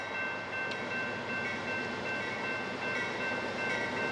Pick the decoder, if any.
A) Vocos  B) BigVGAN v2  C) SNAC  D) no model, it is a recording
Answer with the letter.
D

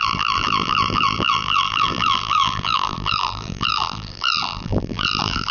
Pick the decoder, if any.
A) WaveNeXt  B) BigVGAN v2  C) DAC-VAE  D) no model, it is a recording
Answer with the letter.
B